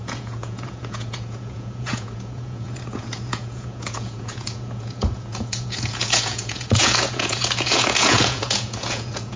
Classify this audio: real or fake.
fake